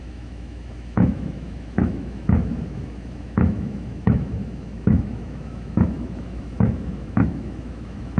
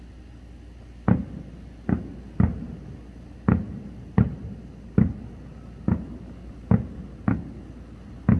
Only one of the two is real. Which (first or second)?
second